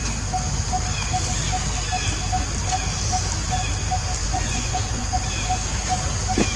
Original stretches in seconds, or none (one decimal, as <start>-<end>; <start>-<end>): 0.0-4.2; 5.2-6.6